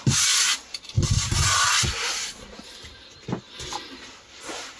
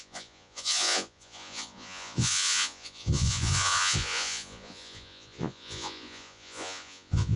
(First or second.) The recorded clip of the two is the first